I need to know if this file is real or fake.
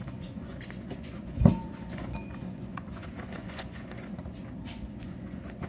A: fake